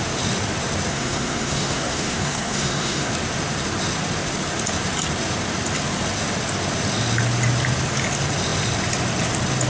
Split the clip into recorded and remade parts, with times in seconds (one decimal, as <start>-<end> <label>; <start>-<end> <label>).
0.0-0.9 recorded; 0.9-3.1 remade; 3.1-9.7 recorded